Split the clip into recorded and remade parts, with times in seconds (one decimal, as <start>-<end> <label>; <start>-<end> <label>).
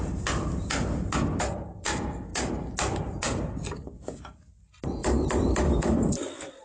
0.0-5.0 recorded; 5.0-6.6 remade